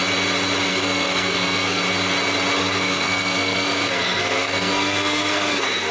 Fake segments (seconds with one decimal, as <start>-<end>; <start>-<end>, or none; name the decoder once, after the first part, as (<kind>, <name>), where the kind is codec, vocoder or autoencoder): 0.7-1.8 (codec, SNAC); 2.6-5.9